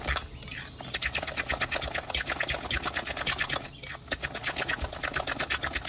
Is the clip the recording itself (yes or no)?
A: yes